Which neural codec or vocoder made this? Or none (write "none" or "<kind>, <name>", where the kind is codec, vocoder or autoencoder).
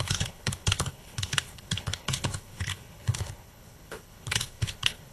codec, HILCodec